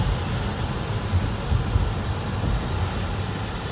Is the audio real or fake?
real